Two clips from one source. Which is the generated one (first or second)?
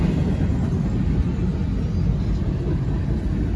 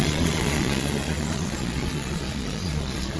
second